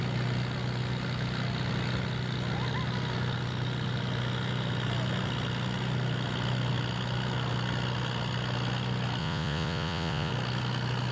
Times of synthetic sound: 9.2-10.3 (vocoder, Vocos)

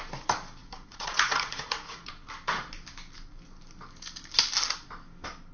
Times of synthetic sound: 0.6-2.1 (vocoder, Vocos)

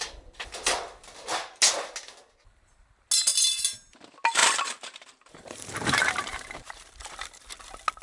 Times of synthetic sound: 3.3-4.0 (vocoder, BigVGAN v2); 4.4-7.5

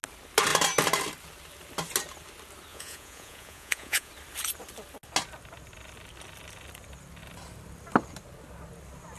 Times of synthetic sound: 2.7-4.1 (vocoder, Vocos)

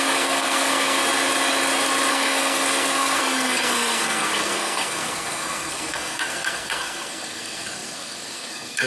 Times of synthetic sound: 0.0-1.0 (codec, SNAC); 2.1-8.9

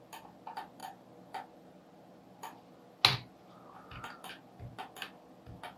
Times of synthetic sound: none

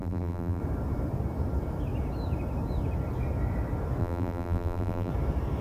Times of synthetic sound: 0.0-0.6 (vocoder, BigVGAN v2); 4.0-5.1

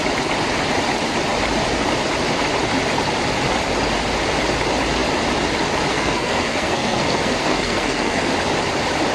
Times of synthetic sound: 5.9-8.3 (codec, SNAC)